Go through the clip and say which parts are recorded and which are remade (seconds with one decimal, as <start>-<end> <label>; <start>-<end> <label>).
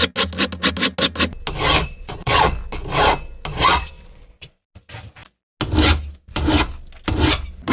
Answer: 0.0-1.8 recorded; 1.8-2.5 remade; 2.5-3.5 recorded; 3.5-4.4 remade; 4.4-7.7 recorded